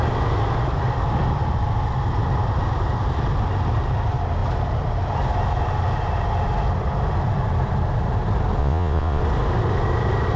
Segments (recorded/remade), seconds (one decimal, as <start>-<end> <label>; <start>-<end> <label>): 0.0-8.6 recorded; 8.6-9.2 remade; 9.2-10.4 recorded

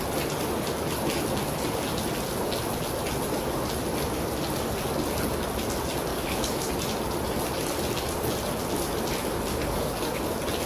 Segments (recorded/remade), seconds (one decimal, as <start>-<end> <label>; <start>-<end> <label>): 0.0-6.1 recorded; 6.1-6.7 remade; 6.7-9.5 recorded; 9.5-10.2 remade; 10.2-10.7 recorded

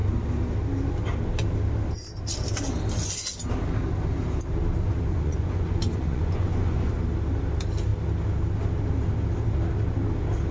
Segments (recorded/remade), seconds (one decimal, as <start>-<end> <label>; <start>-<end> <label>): 0.0-5.1 recorded; 5.1-6.9 remade; 6.9-10.5 recorded

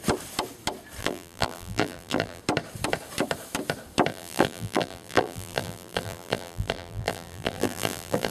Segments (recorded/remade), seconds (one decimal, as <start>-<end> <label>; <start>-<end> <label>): 0.0-1.0 recorded; 1.0-2.4 remade; 2.4-4.1 recorded; 4.1-8.3 remade